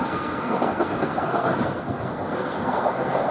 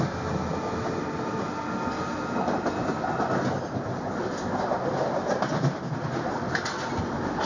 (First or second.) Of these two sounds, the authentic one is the second